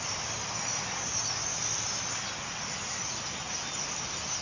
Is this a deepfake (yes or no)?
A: no